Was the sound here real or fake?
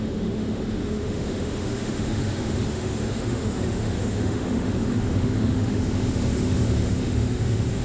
fake